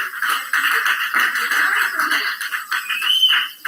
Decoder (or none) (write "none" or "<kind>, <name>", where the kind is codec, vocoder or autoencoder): vocoder, BigVGAN v2